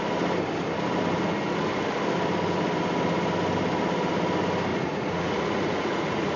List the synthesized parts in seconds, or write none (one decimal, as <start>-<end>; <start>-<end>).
4.7-6.4